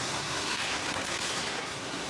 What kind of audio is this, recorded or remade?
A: remade